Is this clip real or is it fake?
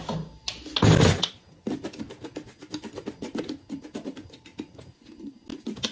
real